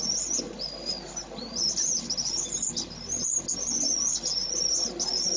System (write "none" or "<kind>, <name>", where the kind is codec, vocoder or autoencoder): none